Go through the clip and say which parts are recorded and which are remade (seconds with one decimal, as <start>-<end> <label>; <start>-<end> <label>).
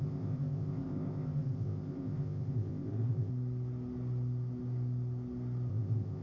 0.0-3.3 remade; 3.3-5.7 recorded; 5.7-6.2 remade